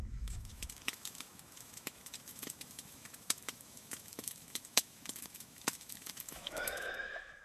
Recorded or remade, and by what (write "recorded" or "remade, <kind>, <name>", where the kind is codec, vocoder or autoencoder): remade, autoencoder, DAC-VAE